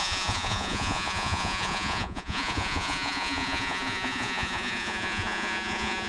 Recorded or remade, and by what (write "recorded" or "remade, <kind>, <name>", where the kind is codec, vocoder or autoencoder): remade, vocoder, Vocos